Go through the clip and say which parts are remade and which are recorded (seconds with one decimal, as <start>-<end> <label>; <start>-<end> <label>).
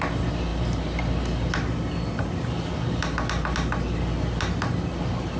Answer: 0.0-5.4 recorded